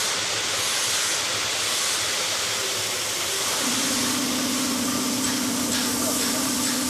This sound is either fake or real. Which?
fake